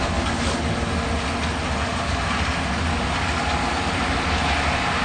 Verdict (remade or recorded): recorded